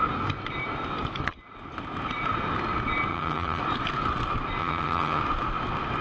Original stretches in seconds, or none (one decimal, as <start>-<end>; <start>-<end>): 0.0-3.1; 3.6-4.6; 5.2-6.0